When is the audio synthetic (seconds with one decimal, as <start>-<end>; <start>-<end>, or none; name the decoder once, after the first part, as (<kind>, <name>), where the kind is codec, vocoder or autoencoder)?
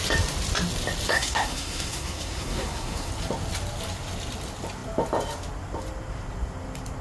1.1-3.1 (codec, SNAC)